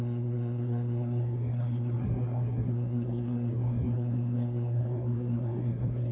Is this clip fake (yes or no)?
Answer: yes